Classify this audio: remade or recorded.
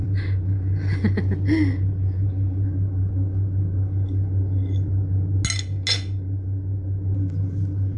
recorded